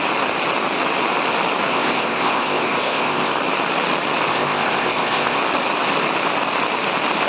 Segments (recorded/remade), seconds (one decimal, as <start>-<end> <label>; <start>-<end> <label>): 0.0-1.7 recorded; 1.7-3.3 remade; 3.3-4.3 recorded; 4.3-5.4 remade; 5.4-7.3 recorded